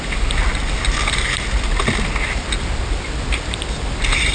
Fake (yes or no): no